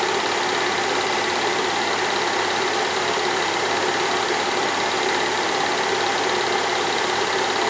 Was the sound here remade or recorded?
recorded